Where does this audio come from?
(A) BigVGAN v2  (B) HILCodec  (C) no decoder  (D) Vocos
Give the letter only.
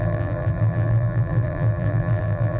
A